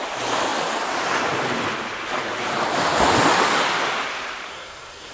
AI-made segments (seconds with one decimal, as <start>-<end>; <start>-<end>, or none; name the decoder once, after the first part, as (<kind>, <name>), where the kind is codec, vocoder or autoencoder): 4.5-5.1 (codec, SNAC)